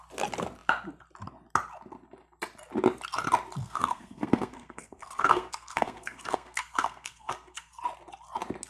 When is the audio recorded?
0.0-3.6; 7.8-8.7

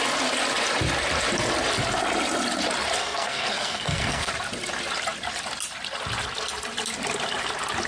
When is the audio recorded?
0.0-3.0; 4.3-7.9